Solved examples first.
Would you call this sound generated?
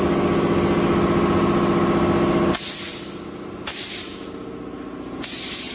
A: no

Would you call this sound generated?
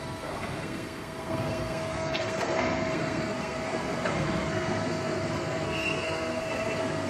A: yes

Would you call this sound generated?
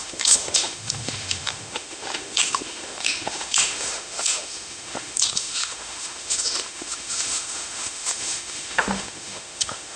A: yes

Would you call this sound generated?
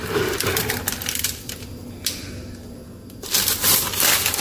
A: no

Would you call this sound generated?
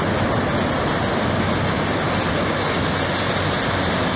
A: no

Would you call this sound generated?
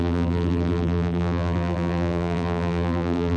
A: yes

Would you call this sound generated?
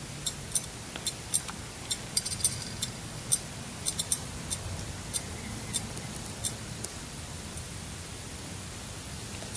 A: yes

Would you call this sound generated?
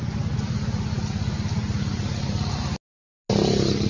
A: no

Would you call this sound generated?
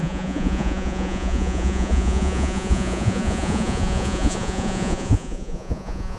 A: yes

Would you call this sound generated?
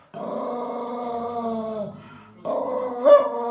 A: no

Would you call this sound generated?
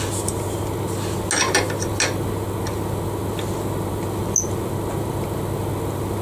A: no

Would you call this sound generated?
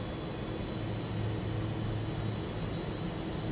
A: no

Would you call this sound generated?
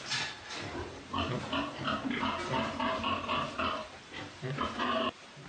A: yes